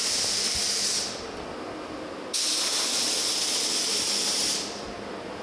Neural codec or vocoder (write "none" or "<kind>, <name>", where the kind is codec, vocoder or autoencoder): none